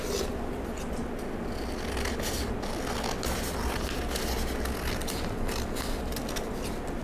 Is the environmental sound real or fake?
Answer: real